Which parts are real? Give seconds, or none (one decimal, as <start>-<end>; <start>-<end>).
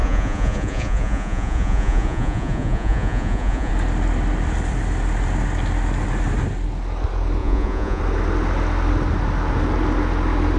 3.7-7.4; 8.0-10.6